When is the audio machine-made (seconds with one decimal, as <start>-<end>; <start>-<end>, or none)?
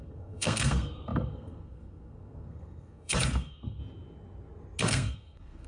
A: 0.0-3.8; 4.8-5.7